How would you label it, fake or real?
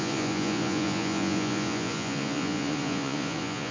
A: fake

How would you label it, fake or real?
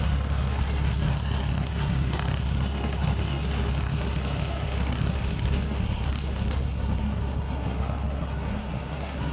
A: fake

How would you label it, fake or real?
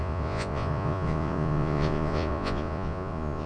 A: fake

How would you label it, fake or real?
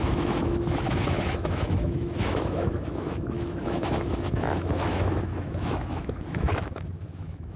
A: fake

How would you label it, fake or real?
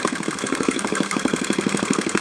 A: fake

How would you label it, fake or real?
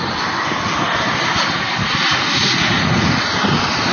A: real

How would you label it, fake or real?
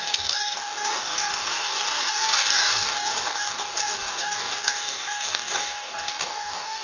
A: fake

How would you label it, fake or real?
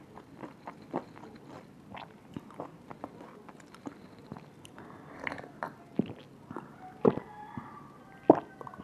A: real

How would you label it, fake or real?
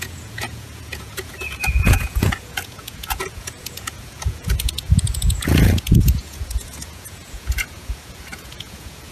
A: fake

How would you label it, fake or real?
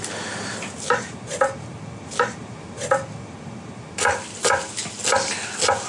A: real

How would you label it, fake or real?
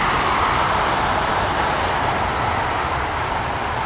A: real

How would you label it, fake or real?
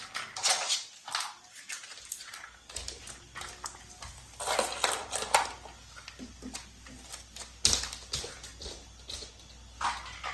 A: real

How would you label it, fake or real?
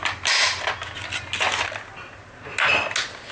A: real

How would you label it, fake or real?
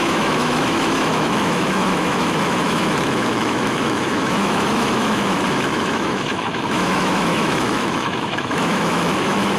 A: fake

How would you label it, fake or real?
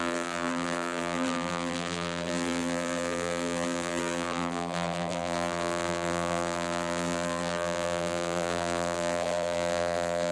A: fake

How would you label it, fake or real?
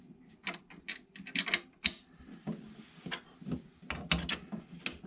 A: real